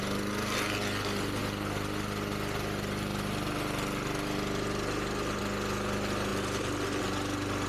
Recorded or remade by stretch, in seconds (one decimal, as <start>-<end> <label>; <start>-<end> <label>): 0.0-7.7 recorded